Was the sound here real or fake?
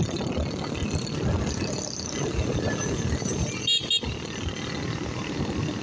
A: real